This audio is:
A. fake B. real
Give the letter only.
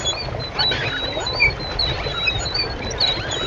B